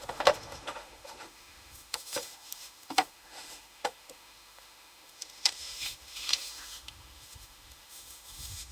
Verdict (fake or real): fake